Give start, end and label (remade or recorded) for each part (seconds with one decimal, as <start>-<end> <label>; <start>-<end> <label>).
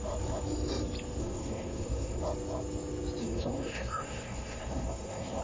0.0-1.2 recorded; 1.2-2.2 remade; 2.2-3.2 recorded; 3.2-5.4 remade